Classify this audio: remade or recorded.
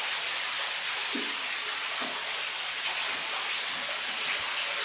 recorded